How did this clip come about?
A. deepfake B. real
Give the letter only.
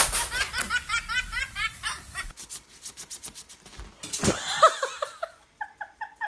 B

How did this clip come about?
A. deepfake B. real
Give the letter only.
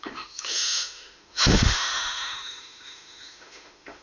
A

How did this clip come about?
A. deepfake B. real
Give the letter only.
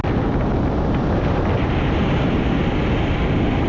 B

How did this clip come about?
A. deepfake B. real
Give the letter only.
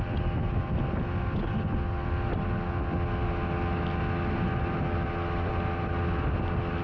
B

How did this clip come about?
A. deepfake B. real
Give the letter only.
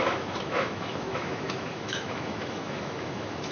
A